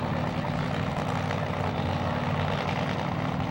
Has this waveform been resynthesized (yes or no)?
no